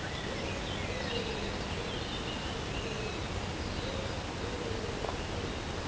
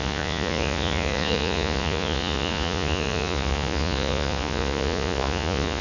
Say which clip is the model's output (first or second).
second